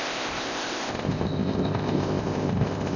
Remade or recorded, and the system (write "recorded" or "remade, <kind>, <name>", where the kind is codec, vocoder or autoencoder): remade, codec, ZipCodec